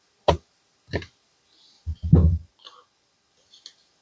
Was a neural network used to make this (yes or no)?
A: no